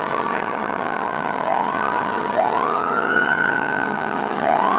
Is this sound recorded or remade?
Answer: remade